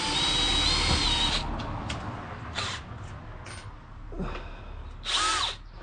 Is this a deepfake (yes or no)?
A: no